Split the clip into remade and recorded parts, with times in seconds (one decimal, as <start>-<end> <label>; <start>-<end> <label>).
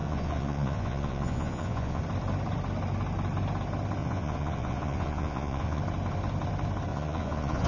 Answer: 0.0-2.0 remade; 2.0-4.0 recorded; 4.0-5.8 remade; 5.8-6.9 recorded; 6.9-7.7 remade